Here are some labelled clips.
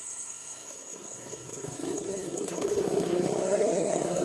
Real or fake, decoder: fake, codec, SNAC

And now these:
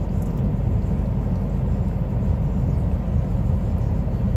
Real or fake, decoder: real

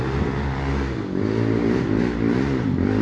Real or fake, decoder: real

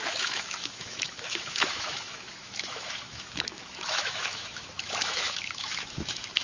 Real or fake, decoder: fake, autoencoder, DAC-VAE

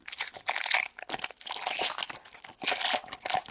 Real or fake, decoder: real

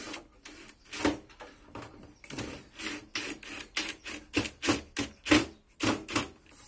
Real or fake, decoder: real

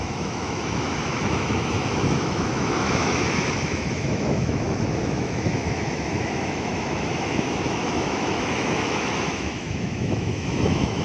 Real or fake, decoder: fake, autoencoder, DAC-VAE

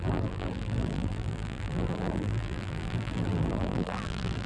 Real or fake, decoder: fake, vocoder, BigVGAN v2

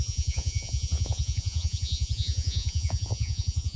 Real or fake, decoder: fake, vocoder, Vocos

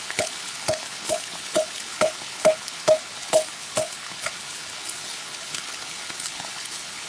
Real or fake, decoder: fake, codec, HILCodec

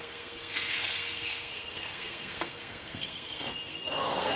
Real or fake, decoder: fake, codec, SNAC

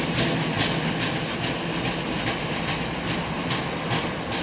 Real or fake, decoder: real